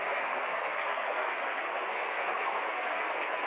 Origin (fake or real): fake